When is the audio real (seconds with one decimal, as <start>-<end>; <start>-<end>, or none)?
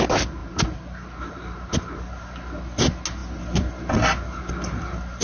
0.0-0.4; 2.1-5.2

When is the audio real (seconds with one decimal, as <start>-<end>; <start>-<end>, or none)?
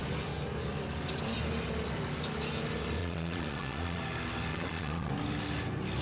0.0-3.0; 4.0-4.5; 5.1-6.0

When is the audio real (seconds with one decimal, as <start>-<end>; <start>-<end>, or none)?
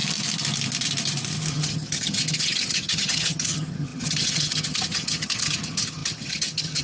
0.0-1.5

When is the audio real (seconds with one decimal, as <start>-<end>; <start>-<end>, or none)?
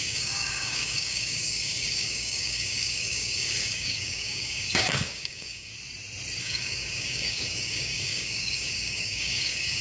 5.7-6.4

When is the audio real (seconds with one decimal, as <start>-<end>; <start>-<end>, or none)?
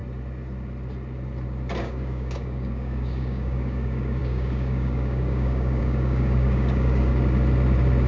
0.0-1.8; 7.1-8.1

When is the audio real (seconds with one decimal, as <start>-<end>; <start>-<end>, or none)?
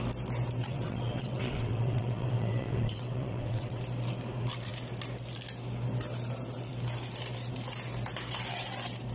0.0-0.6; 3.8-9.1